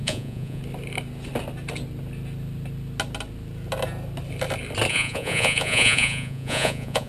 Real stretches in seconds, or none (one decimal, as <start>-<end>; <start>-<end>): 0.6-4.9